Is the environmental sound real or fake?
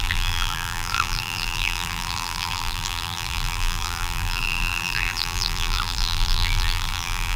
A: fake